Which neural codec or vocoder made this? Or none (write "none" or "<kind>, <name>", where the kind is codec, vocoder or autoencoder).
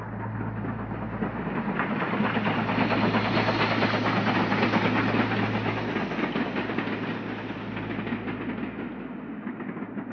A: none